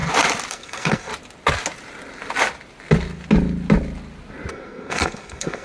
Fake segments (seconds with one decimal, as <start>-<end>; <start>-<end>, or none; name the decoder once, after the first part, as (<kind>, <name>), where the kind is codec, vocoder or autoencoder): 0.5-1.1 (codec, SNAC); 4.5-5.6